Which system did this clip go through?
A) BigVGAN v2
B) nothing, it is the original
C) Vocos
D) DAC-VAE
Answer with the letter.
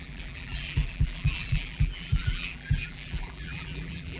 A